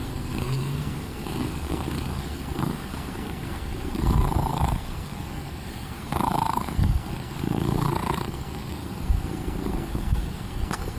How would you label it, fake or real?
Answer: fake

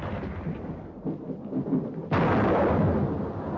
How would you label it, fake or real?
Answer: real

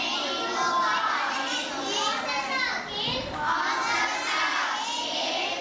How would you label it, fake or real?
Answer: real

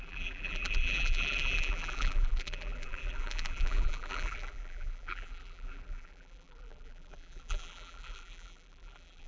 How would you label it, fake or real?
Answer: fake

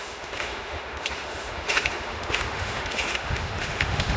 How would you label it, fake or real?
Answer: fake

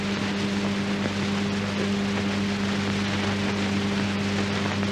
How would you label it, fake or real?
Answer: real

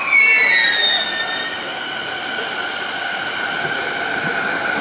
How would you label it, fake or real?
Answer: real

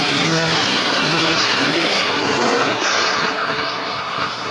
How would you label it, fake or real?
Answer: fake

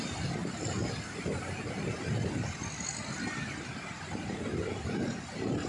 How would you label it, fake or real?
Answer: real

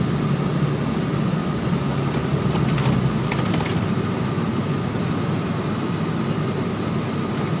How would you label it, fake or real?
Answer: real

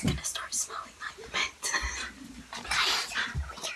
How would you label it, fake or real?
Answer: fake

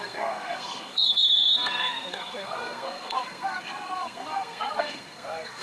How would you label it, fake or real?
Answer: fake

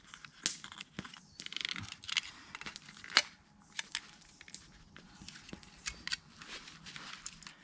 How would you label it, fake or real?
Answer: real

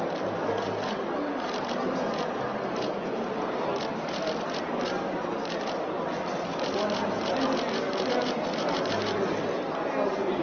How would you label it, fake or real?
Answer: real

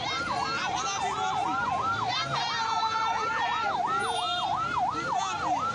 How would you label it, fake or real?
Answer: real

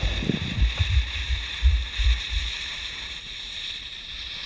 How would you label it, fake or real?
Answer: fake